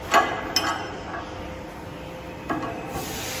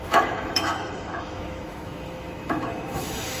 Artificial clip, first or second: second